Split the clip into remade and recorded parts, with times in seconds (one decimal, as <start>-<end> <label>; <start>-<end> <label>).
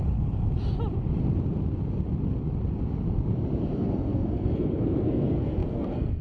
0.0-3.7 recorded; 3.7-6.2 remade